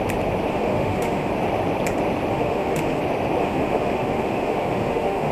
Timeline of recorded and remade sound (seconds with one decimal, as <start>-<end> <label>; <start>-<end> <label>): 0.0-0.5 recorded; 0.5-1.3 remade; 1.3-2.3 recorded; 2.3-3.0 remade; 3.0-3.4 recorded; 3.4-5.3 remade